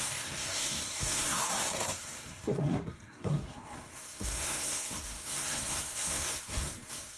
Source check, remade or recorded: remade